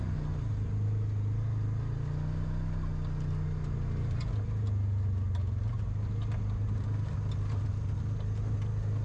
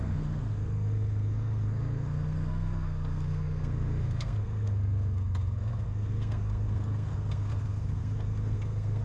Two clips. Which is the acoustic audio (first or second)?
first